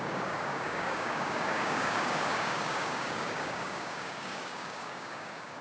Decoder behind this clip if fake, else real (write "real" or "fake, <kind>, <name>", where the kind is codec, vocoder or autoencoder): fake, codec, DAC